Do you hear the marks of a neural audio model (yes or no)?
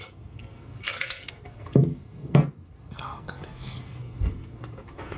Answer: yes